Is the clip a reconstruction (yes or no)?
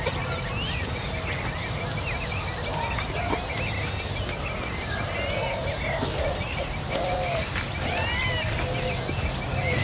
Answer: no